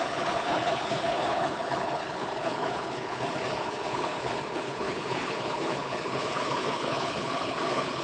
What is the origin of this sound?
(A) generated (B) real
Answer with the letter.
A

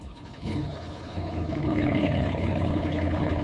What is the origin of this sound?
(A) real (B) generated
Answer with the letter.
B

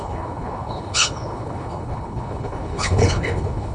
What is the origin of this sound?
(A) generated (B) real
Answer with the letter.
A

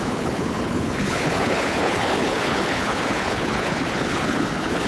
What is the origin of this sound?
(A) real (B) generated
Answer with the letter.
B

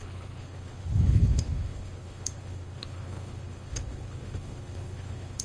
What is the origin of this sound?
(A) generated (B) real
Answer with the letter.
A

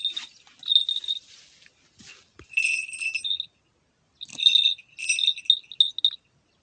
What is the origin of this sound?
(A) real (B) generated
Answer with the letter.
A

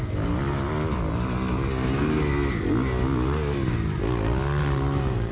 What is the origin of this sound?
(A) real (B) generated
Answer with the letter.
A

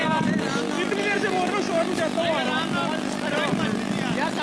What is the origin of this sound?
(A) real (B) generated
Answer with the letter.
A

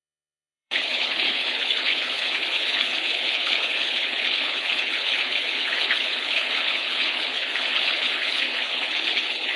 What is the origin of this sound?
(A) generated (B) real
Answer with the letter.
A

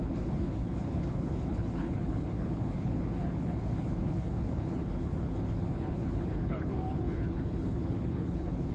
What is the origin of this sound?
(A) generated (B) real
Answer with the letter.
A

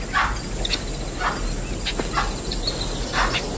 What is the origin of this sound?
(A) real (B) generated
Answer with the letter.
A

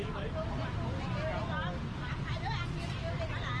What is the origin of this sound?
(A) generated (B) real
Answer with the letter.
B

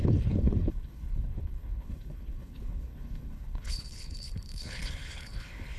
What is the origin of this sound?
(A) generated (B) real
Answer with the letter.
A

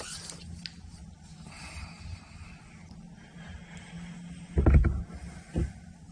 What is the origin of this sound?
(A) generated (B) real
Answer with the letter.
B